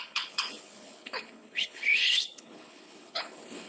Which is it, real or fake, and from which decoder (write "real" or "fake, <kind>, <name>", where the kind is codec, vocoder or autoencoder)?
fake, codec, HILCodec